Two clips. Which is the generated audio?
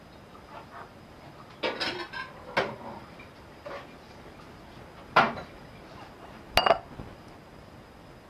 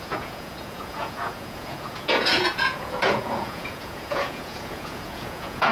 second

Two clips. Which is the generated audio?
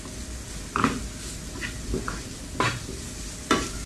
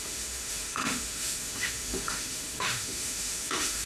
second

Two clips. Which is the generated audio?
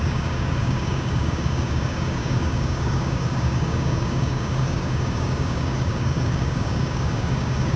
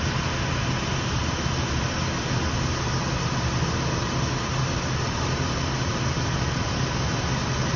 first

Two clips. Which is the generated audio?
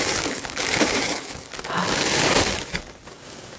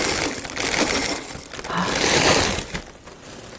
first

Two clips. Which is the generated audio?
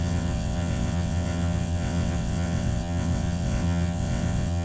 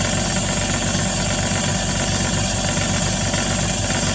first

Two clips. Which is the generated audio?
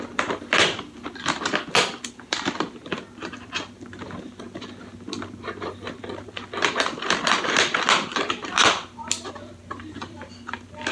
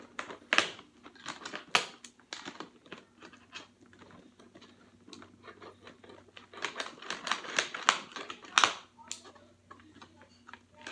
first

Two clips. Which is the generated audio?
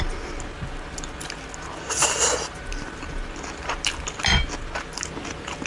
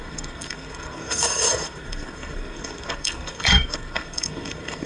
second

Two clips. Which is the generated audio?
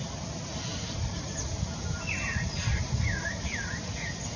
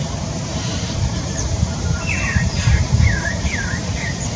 second